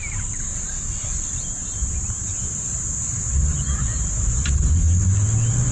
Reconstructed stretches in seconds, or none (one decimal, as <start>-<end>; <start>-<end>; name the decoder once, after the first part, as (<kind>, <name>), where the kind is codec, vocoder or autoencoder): 1.6-5.0 (vocoder, BigVGAN v2)